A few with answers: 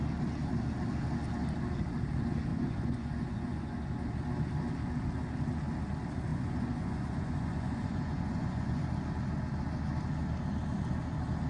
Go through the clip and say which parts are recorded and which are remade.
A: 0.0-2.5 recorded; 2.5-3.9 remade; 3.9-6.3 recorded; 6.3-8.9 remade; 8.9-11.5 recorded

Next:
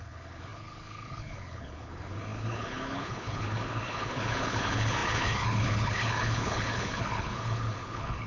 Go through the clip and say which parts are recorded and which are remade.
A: 0.0-8.3 remade

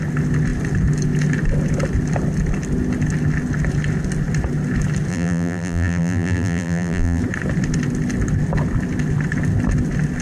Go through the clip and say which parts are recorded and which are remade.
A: 0.0-5.1 recorded; 5.1-7.2 remade; 7.2-10.2 recorded

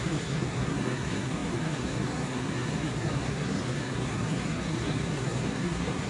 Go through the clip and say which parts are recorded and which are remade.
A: 0.0-6.1 remade

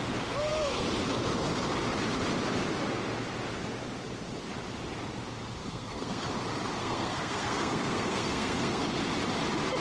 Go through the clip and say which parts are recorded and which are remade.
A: 0.0-5.6 recorded; 5.6-6.3 remade; 6.3-6.8 recorded; 6.8-8.8 remade; 8.8-9.8 recorded

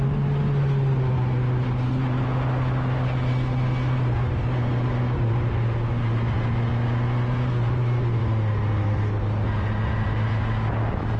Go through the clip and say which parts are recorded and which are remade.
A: 0.0-11.2 recorded

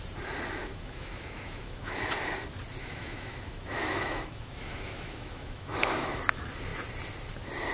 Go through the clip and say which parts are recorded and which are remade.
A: 0.0-0.6 recorded; 0.6-2.0 remade; 2.0-2.8 recorded; 2.8-6.2 remade; 6.2-7.7 recorded

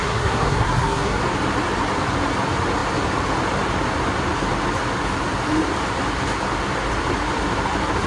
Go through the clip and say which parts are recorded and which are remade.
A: 0.0-1.2 remade; 1.2-8.1 recorded